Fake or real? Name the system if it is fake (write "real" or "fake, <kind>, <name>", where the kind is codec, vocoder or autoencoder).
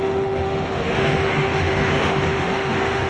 fake, autoencoder, DAC-VAE